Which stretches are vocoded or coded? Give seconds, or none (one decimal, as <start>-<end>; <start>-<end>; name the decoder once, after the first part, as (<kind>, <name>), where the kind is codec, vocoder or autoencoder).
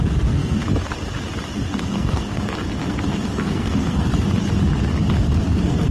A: 0.0-0.6 (codec, SNAC); 1.7-4.1; 5.2-5.9